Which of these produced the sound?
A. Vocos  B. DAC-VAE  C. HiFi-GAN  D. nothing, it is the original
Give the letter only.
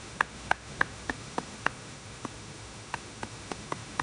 B